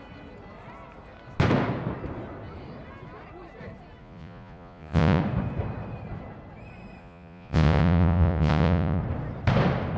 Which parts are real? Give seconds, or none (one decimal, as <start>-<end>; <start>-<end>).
0.0-4.0; 5.2-7.0; 9.0-10.0